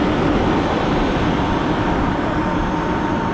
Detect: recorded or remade recorded